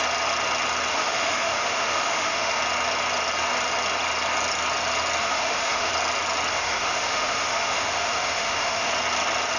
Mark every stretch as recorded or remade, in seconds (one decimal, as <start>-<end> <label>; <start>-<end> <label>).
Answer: 0.0-0.9 recorded; 0.9-2.6 remade; 2.6-5.2 recorded; 5.2-5.9 remade; 5.9-6.5 recorded; 6.5-8.9 remade; 8.9-9.6 recorded